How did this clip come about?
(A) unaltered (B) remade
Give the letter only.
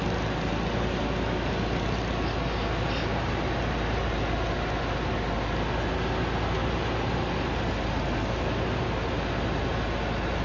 A